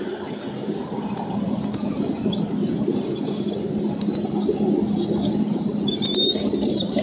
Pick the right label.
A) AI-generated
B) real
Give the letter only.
B